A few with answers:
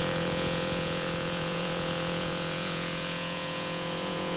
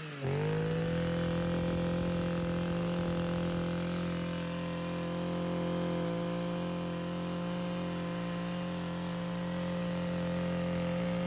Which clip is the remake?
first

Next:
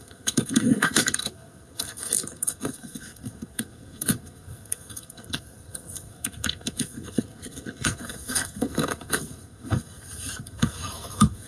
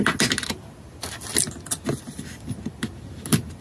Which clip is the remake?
first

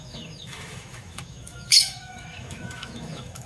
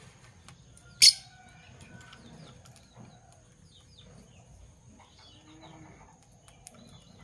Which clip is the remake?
first